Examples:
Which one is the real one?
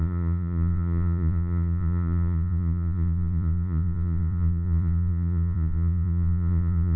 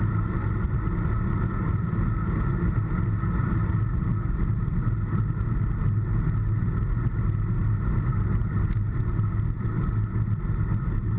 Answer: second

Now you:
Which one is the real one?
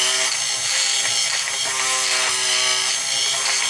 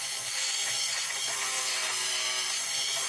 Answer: first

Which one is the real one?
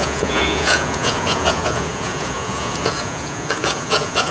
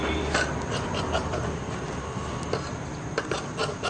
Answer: second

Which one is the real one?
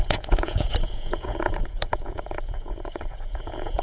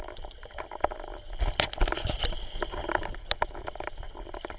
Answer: second